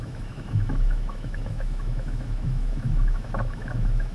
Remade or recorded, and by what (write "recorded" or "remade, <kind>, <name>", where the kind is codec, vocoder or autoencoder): remade, autoencoder, DAC-VAE